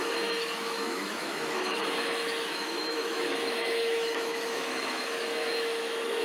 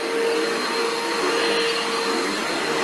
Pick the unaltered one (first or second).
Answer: second